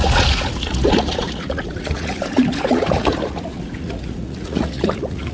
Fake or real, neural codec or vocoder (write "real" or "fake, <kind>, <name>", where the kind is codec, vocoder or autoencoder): fake, vocoder, Vocos